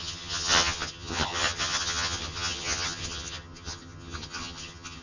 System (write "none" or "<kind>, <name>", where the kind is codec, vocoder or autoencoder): vocoder, HiFi-GAN